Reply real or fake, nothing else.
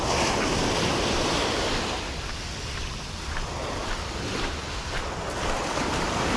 real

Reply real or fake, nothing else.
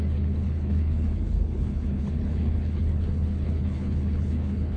fake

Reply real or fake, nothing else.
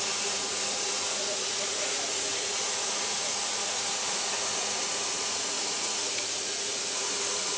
fake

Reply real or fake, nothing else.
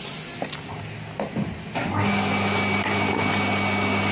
real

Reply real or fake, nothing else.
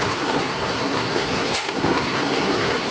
fake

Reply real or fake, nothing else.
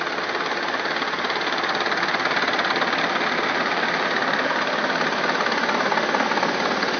real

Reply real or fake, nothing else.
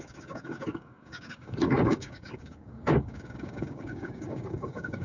fake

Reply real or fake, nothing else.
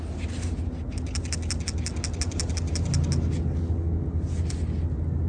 real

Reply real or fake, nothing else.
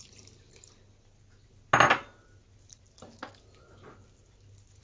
real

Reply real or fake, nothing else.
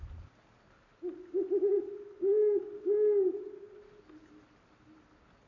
real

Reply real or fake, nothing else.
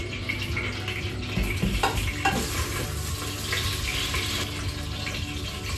real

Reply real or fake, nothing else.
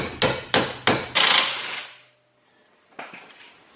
real